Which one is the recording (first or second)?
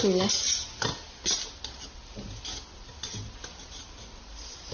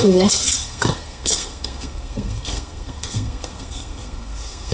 first